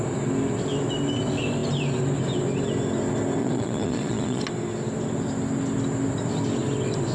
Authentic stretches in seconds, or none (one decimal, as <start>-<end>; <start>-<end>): 0.0-3.4; 4.4-7.1